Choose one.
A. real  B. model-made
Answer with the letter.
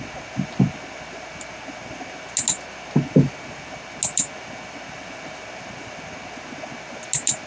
A